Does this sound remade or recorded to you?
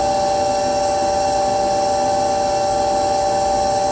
recorded